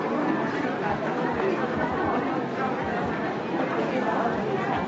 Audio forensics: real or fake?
real